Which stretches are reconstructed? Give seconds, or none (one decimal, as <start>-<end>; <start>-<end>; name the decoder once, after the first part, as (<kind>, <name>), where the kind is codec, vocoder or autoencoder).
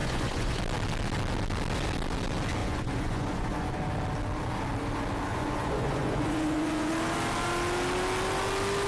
0.0-0.6 (vocoder, Vocos); 2.6-3.8; 5.3-6.9